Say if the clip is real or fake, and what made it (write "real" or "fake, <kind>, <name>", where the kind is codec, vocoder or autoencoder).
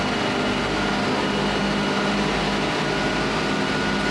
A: real